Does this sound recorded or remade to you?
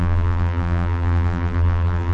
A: remade